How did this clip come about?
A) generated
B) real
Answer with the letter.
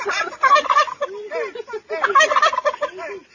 B